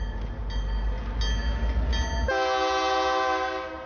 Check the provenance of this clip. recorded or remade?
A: recorded